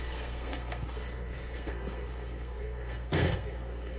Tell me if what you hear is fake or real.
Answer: fake